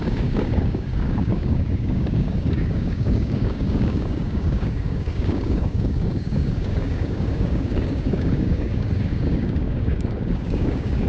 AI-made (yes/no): yes